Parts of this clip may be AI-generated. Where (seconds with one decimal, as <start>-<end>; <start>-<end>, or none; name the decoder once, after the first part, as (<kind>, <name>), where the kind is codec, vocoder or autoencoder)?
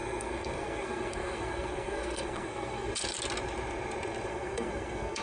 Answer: 0.0-2.9 (codec, SNAC); 4.3-5.2